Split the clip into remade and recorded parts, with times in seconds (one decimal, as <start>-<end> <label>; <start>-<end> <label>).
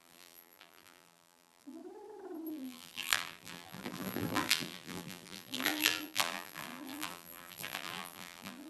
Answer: 0.0-1.8 remade; 1.8-2.5 recorded; 2.5-8.7 remade